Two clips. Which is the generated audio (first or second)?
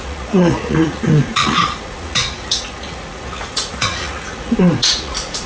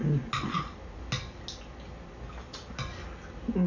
first